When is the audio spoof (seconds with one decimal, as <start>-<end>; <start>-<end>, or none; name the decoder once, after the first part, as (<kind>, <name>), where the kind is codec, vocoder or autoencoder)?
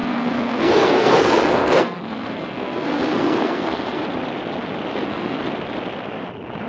0.0-4.0 (codec, SNAC); 4.9-5.4